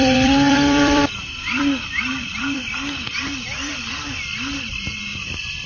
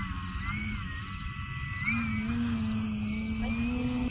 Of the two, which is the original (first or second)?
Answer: second